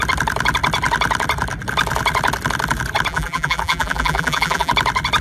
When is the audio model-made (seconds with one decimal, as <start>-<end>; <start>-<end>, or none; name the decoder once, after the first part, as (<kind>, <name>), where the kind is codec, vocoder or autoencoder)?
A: 3.1-4.7 (vocoder, BigVGAN v2)